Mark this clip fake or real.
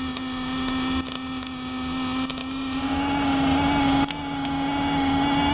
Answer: real